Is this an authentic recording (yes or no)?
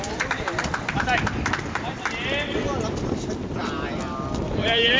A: yes